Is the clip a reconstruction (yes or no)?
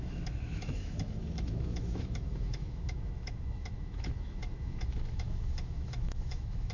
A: yes